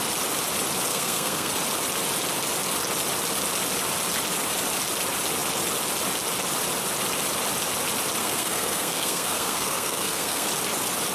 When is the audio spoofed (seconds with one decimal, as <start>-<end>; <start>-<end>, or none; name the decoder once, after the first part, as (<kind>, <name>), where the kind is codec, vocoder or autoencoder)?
0.9-1.5 (codec, SNAC); 8.2-10.5